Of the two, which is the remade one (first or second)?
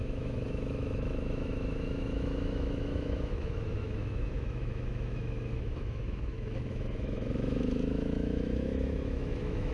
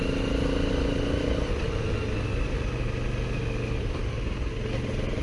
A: first